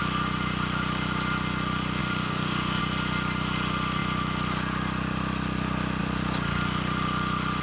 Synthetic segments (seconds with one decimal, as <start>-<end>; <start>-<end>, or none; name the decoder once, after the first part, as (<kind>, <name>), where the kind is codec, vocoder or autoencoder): 2.0-2.8 (codec, DAC)